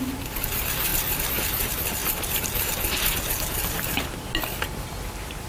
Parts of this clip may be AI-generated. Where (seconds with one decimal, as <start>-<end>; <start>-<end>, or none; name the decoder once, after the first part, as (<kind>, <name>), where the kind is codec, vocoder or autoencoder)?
none